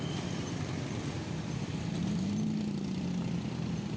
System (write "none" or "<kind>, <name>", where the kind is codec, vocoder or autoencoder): none